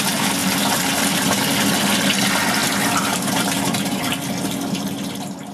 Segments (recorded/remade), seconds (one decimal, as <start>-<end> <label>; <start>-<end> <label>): 0.0-2.6 recorded; 2.6-4.3 remade; 4.3-5.5 recorded